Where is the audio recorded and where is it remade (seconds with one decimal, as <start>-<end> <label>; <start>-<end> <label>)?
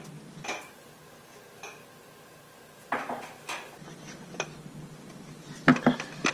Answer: 0.0-6.3 recorded